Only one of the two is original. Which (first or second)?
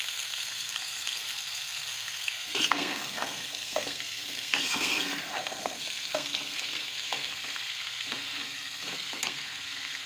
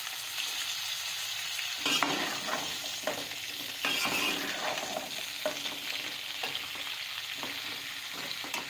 second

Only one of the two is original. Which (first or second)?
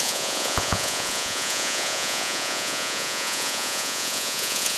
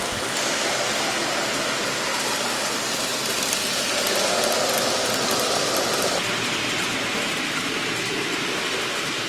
second